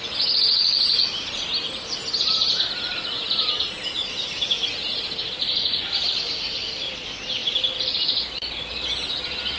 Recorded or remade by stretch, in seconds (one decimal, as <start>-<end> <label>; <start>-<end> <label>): 0.0-9.6 recorded